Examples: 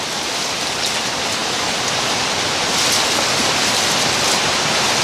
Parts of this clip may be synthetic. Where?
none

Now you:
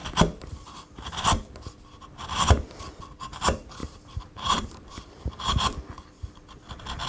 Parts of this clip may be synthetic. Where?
3.8-5.4

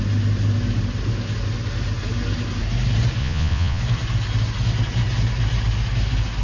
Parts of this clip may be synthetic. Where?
3.2-3.8

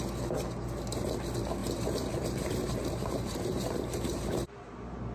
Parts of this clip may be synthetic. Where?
1.6-5.1

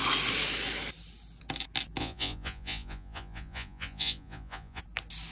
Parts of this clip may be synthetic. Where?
2.0-4.8

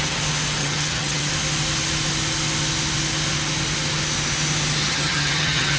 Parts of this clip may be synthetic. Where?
0.6-1.3; 4.8-5.8

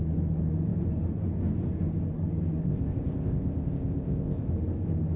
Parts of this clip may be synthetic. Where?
2.6-4.5

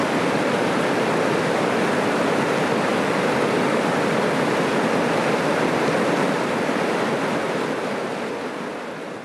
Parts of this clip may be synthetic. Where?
none